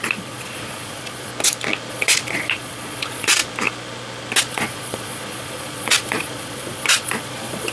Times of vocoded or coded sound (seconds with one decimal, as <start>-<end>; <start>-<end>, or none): 0.0-1.3; 1.9-3.4; 4.4-7.7